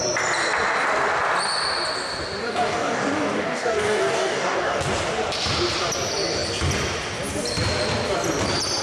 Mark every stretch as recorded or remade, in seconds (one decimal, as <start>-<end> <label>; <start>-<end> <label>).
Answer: 0.0-2.4 recorded; 2.4-4.8 remade; 4.8-8.8 recorded